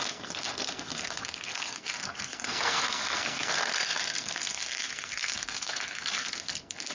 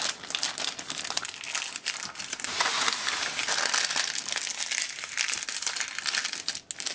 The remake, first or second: first